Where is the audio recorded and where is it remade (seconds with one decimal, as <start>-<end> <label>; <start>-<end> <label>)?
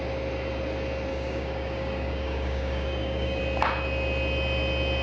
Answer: 0.0-1.1 recorded; 1.1-3.4 remade; 3.4-5.0 recorded